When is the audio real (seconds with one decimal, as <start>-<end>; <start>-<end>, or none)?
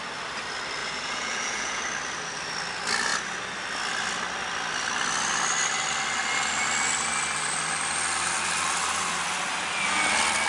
0.0-0.8; 1.8-10.5